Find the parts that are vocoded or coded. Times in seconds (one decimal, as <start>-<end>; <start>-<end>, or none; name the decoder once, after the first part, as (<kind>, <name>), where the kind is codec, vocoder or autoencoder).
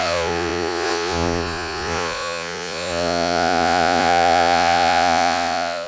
0.0-5.9 (vocoder, Vocos)